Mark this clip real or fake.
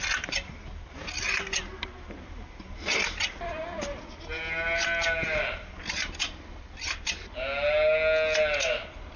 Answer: real